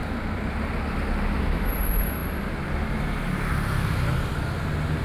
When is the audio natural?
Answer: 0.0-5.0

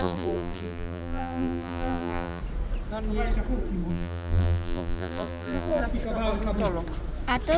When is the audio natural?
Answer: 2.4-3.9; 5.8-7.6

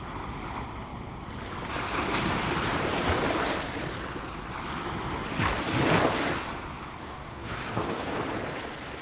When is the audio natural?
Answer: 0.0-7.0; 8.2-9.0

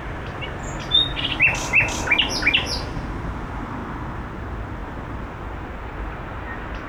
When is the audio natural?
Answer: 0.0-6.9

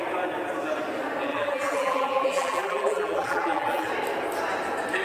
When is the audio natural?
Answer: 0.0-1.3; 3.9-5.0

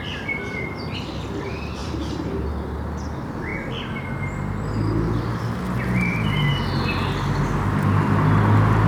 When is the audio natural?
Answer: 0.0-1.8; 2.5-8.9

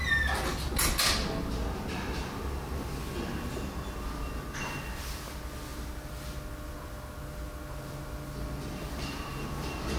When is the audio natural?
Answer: 0.0-10.0